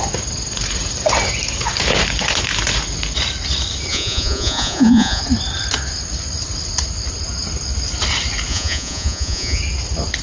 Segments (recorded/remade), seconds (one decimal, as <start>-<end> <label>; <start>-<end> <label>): 0.0-3.9 recorded; 3.9-5.2 remade; 5.2-8.5 recorded; 8.5-9.6 remade; 9.6-10.2 recorded